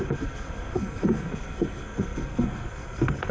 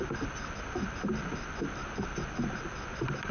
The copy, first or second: first